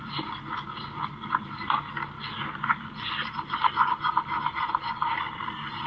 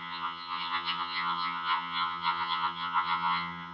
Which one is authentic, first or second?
first